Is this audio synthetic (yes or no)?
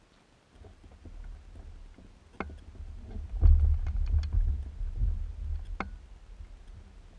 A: no